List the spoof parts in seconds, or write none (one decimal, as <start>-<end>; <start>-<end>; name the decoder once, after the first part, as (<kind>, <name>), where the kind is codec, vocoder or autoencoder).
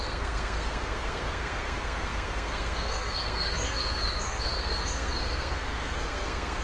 0.0-6.6 (codec, SNAC)